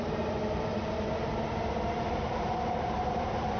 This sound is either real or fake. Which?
fake